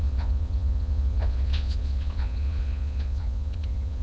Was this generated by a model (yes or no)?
yes